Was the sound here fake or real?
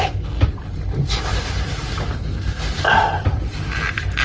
real